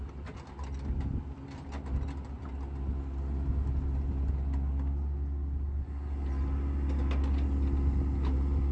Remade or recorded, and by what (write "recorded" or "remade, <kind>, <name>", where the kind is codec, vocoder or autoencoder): recorded